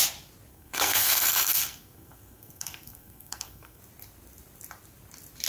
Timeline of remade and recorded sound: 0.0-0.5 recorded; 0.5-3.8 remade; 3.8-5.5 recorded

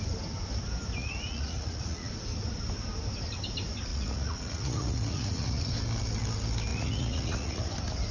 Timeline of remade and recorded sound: 0.0-1.0 recorded; 1.0-2.1 remade; 2.1-3.9 recorded; 3.9-5.7 remade; 5.7-6.7 recorded; 6.7-7.6 remade; 7.6-8.1 recorded

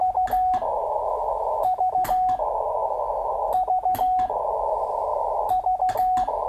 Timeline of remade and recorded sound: 0.0-0.7 recorded; 0.7-1.9 remade; 1.9-6.5 recorded

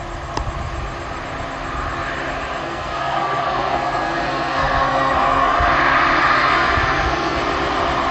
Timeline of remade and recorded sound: 0.0-2.6 recorded; 2.6-5.7 remade; 5.7-6.4 recorded; 6.4-7.4 remade; 7.4-8.1 recorded

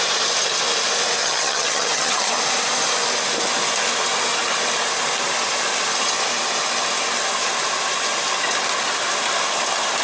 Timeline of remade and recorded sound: 0.0-1.2 recorded; 1.2-2.3 remade; 2.3-10.0 recorded